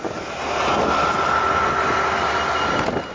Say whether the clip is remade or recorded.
recorded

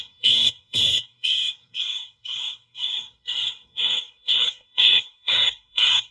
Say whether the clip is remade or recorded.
remade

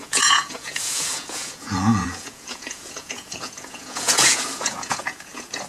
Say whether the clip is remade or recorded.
remade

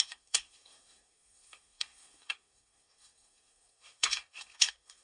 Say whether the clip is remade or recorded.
remade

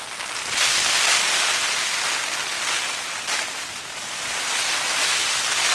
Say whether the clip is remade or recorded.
recorded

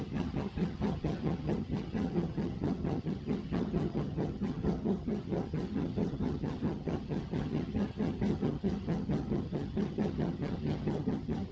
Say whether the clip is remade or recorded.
remade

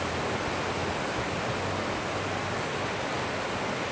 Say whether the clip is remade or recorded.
recorded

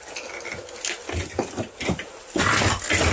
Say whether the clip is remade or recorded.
recorded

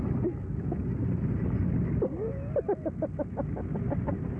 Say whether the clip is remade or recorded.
recorded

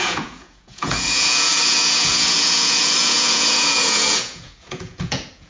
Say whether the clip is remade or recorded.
remade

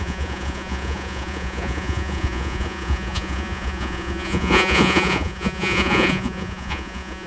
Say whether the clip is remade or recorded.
remade